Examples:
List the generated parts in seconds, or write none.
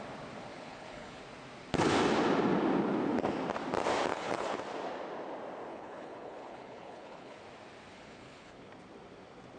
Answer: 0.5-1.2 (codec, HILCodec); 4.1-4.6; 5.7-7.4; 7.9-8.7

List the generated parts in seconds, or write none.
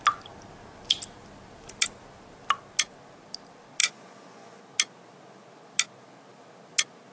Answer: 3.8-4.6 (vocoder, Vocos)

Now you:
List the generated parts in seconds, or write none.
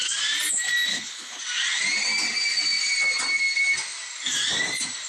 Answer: 0.9-1.4 (codec, HILCodec)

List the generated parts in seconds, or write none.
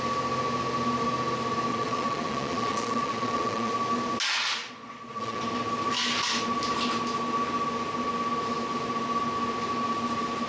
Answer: 1.7-3.7 (vocoder, Vocos); 4.6-5.4